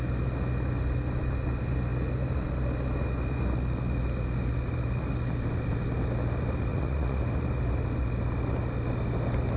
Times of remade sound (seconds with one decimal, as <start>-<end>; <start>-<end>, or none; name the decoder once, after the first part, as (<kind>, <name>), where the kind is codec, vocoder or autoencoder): 6.7-7.2 (vocoder, Vocos)